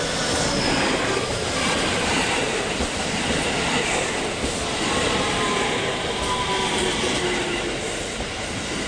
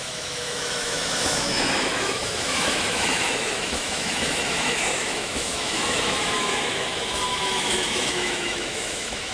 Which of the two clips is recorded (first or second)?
first